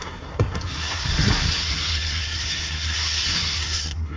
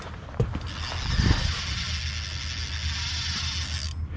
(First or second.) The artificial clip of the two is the first